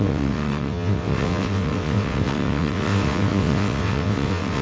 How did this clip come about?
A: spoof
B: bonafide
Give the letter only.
A